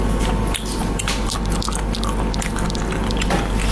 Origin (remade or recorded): recorded